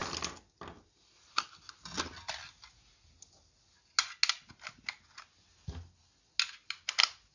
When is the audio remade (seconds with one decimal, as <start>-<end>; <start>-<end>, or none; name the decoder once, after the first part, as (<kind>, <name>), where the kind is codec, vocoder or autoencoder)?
none